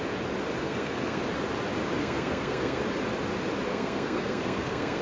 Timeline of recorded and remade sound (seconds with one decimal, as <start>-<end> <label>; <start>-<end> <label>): 0.0-0.6 recorded; 0.6-1.2 remade; 1.2-2.0 recorded; 2.0-2.8 remade; 2.8-3.7 recorded; 3.7-5.0 remade